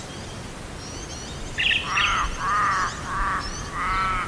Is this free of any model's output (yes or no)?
yes